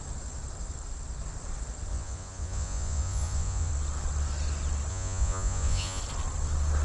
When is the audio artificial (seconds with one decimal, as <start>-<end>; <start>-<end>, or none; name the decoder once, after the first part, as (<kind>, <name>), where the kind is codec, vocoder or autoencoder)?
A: 1.9-3.7 (vocoder, Vocos); 4.9-6.0